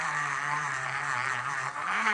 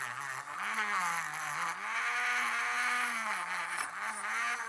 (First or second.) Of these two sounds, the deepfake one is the first